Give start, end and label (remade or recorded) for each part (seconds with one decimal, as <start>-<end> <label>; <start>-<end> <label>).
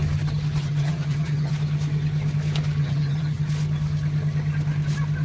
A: 0.0-0.6 recorded; 0.6-1.5 remade; 1.5-2.8 recorded; 2.8-3.4 remade; 3.4-5.2 recorded